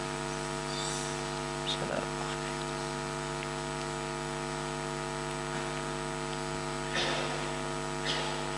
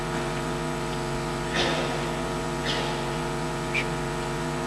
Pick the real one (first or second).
first